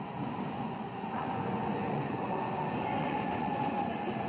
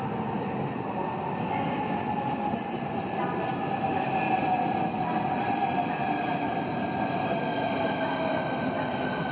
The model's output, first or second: first